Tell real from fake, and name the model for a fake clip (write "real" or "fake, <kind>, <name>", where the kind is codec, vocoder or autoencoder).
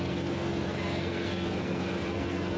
fake, codec, SNAC